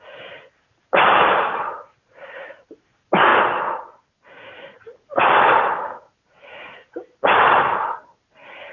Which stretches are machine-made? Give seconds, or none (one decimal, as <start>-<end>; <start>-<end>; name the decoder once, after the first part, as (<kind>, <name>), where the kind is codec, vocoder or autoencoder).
none